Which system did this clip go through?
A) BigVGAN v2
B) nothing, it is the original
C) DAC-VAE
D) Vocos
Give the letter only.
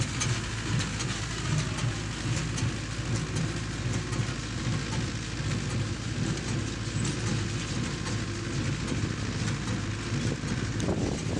B